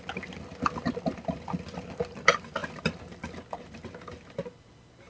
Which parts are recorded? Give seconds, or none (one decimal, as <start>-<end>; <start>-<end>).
0.0-5.1